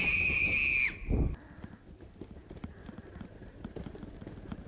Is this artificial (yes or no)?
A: no